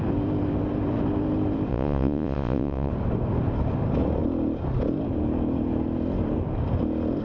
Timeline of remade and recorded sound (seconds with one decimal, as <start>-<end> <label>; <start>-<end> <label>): 0.0-1.7 recorded; 1.7-2.9 remade; 2.9-7.2 recorded